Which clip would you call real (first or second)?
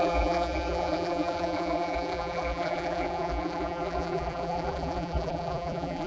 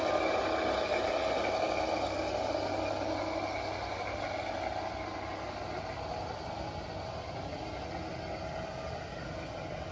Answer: second